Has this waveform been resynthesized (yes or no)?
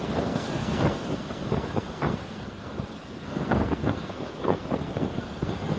yes